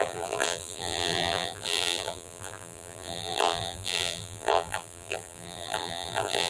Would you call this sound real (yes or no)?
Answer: no